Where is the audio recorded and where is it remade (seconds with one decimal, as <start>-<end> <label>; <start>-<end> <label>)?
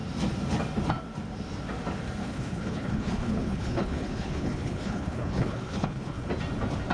0.0-2.2 recorded; 2.2-6.3 remade; 6.3-6.9 recorded